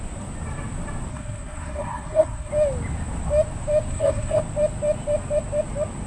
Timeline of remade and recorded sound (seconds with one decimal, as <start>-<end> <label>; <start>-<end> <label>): 0.0-1.1 recorded; 1.1-2.5 remade; 2.5-3.9 recorded; 3.9-4.4 remade; 4.4-6.1 recorded